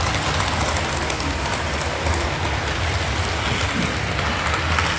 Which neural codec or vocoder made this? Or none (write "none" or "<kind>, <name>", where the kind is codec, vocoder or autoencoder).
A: none